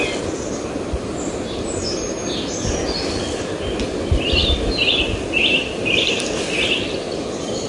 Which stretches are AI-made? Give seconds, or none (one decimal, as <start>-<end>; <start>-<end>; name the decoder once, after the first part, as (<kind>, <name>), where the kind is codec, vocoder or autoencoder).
none